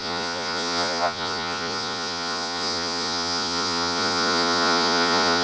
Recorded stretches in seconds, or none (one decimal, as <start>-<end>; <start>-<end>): none